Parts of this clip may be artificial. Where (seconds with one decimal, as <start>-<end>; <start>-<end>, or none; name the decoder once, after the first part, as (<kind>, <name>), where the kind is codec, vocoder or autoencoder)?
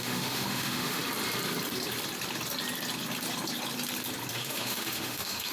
0.0-1.0 (autoencoder, DAC-VAE); 4.3-5.5